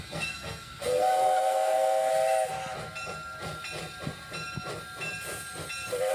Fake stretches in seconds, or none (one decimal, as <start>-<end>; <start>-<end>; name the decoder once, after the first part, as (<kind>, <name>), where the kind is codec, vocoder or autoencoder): 0.0-2.1 (codec, SNAC)